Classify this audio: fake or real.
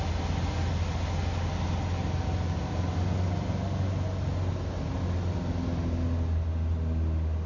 real